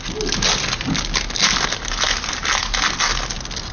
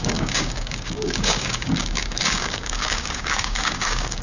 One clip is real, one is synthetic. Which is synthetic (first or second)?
second